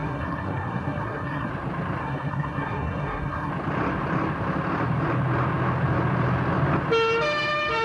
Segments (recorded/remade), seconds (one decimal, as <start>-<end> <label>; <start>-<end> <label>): 0.0-1.5 remade; 1.5-2.0 recorded; 2.0-3.5 remade; 3.5-7.8 recorded